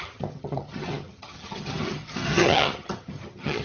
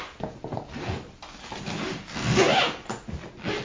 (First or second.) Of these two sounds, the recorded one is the second